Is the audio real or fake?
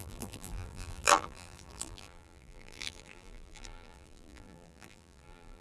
fake